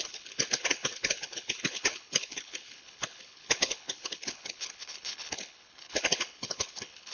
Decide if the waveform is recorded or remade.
remade